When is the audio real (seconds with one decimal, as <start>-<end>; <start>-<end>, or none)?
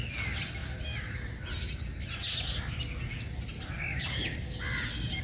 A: 0.0-5.2